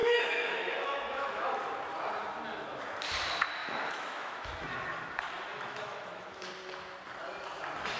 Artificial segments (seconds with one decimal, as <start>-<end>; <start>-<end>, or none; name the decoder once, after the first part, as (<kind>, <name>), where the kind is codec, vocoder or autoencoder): 0.0-1.6 (autoencoder, DAC-VAE); 3.6-4.5; 5.5-6.5